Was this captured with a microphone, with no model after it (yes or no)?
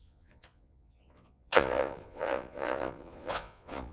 no